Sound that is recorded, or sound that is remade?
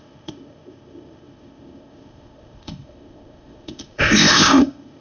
remade